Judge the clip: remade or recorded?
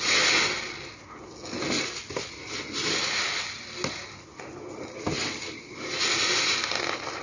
recorded